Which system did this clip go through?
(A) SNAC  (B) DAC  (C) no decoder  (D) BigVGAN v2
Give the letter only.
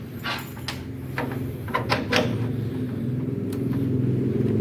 C